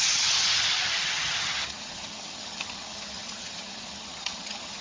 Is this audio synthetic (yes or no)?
yes